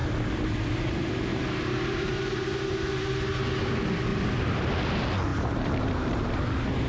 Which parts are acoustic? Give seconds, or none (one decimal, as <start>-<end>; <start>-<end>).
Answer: 0.0-1.3; 2.8-4.1; 4.7-5.3; 6.3-6.9